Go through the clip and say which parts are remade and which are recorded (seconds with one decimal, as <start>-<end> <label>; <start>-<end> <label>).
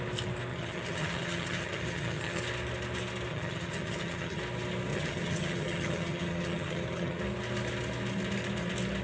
0.0-0.5 recorded; 0.5-2.4 remade; 2.4-3.3 recorded; 3.3-4.4 remade; 4.4-4.9 recorded; 4.9-7.2 remade; 7.2-9.0 recorded